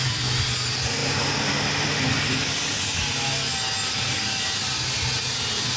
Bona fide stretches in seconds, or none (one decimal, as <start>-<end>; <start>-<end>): 0.0-5.8